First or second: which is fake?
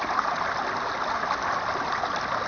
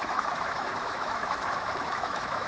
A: second